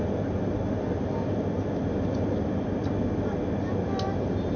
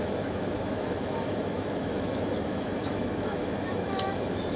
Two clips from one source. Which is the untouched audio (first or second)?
first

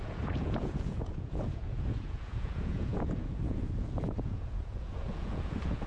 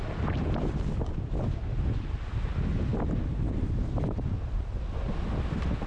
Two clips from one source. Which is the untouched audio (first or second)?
second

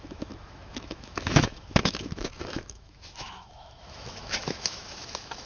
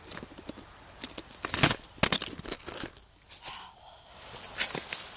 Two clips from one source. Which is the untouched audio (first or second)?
second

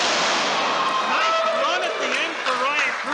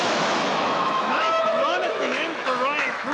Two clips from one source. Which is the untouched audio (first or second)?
first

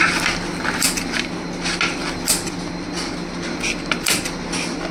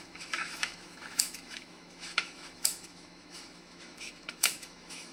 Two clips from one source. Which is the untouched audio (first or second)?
first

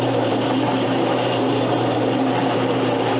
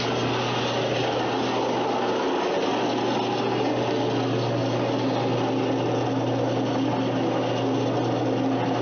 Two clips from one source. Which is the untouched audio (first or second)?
second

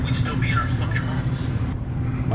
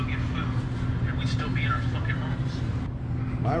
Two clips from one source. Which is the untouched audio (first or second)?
second